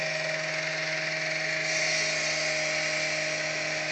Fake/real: real